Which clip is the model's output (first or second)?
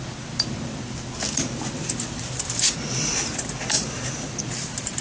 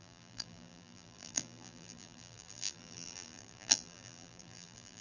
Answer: second